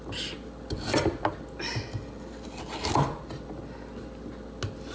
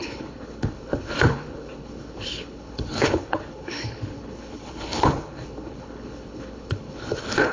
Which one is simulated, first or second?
second